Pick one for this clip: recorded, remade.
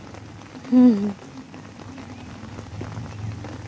recorded